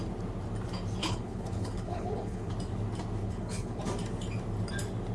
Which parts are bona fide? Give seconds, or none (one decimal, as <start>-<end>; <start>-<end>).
0.0-1.0; 2.5-3.2; 3.8-5.1